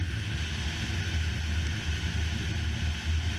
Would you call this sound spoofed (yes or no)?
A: no